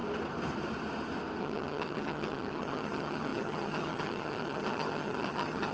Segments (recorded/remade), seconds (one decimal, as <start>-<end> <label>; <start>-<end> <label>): 0.0-1.4 recorded; 1.4-5.7 remade